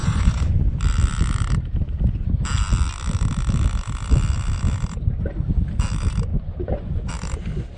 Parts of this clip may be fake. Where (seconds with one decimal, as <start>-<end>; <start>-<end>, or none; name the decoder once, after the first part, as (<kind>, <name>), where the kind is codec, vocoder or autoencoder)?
0.0-0.7 (vocoder, Vocos); 6.3-7.1